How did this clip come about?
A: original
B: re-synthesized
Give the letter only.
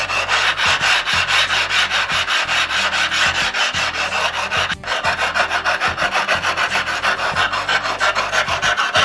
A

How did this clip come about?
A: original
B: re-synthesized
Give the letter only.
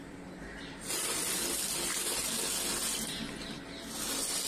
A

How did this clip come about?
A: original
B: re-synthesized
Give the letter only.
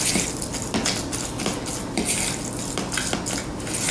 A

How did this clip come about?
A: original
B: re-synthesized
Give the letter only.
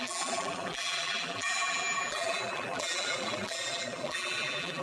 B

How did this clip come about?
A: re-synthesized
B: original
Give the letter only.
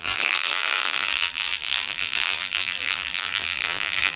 A